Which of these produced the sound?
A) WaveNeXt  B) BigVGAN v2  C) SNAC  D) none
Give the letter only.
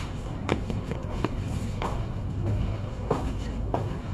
C